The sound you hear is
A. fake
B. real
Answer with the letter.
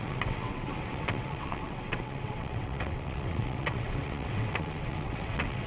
A